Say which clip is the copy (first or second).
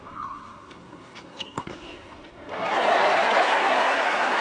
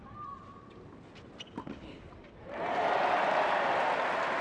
first